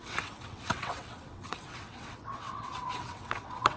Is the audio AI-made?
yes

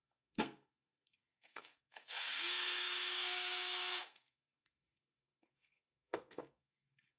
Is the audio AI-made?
yes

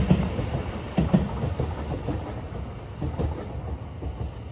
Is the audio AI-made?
no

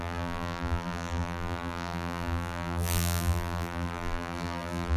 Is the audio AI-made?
yes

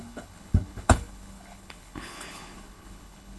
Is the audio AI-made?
yes